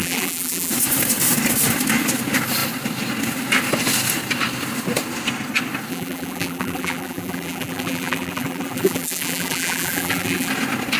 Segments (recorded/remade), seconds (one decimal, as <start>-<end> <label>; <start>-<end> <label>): 0.0-0.7 remade; 0.7-5.9 recorded; 5.9-10.5 remade; 10.5-11.0 recorded

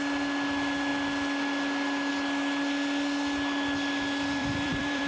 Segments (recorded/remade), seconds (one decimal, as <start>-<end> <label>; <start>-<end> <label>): 0.0-4.4 recorded; 4.4-5.1 remade

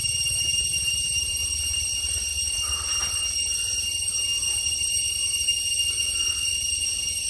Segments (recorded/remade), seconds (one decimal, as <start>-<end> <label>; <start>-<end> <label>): 0.0-1.4 remade; 1.4-7.3 recorded

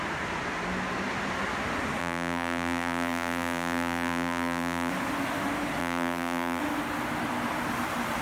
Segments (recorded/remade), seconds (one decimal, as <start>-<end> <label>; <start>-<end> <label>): 0.0-2.0 recorded; 2.0-4.9 remade; 4.9-5.8 recorded; 5.8-6.6 remade; 6.6-8.2 recorded

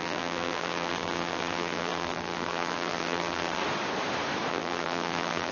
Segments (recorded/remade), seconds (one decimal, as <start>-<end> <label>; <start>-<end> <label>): 0.0-3.6 remade; 3.6-4.5 recorded; 4.5-5.5 remade